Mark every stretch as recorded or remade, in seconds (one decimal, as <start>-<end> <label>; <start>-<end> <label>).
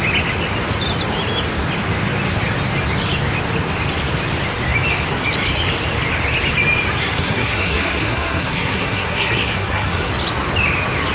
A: 0.0-7.0 recorded; 7.0-10.1 remade; 10.1-11.1 recorded